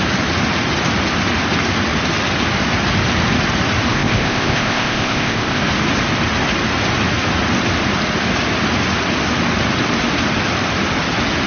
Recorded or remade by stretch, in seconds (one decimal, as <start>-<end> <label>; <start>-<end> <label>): 0.0-3.9 recorded; 3.9-5.6 remade; 5.6-11.5 recorded